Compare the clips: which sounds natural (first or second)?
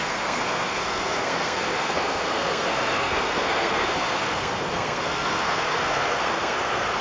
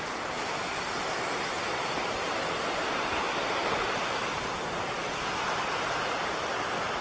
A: second